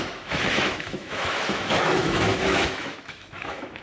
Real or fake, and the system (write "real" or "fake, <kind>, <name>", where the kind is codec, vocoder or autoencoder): fake, autoencoder, DAC-VAE